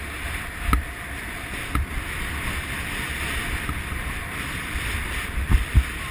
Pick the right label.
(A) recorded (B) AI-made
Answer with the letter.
A